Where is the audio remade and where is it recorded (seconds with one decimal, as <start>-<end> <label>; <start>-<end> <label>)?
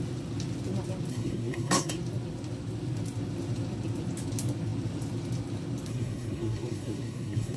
0.0-1.1 recorded; 1.1-1.9 remade; 1.9-5.9 recorded; 5.9-7.6 remade